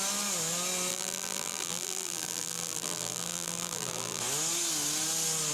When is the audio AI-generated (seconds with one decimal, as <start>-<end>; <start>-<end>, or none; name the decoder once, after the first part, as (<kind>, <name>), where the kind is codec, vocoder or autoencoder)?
0.9-4.2 (vocoder, BigVGAN v2)